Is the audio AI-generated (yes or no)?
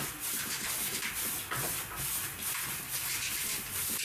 no